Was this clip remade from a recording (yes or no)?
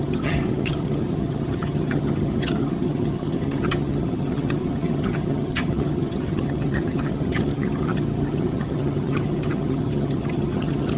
yes